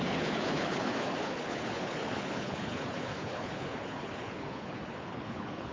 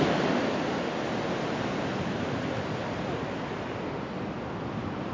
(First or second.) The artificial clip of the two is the first